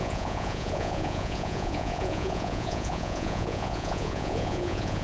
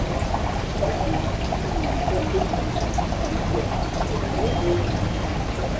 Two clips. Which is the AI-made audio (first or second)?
first